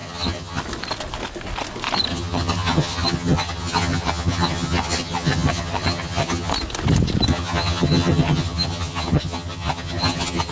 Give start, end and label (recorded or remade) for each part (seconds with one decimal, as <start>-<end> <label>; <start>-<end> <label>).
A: 0.0-0.6 remade; 0.6-2.1 recorded; 2.1-6.5 remade; 6.5-7.3 recorded; 7.3-10.5 remade